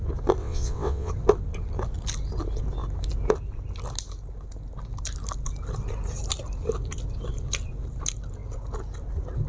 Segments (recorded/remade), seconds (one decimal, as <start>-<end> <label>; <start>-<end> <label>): 0.0-0.4 recorded; 0.4-1.1 remade; 1.1-9.5 recorded